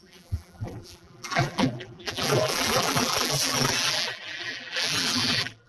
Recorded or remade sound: remade